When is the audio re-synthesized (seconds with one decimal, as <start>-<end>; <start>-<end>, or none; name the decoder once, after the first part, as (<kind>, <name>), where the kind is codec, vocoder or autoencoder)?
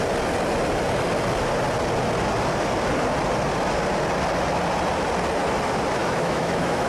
6.0-6.9 (autoencoder, DAC-VAE)